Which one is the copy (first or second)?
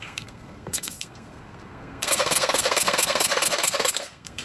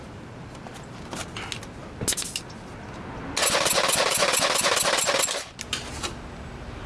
first